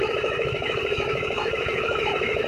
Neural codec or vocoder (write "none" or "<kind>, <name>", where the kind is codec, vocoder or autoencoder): autoencoder, DAC-VAE